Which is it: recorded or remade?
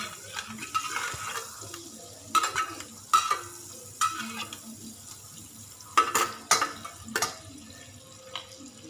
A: recorded